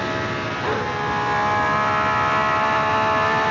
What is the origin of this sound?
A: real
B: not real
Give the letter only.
A